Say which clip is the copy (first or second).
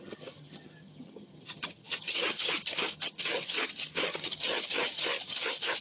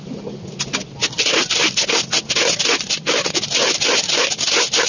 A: first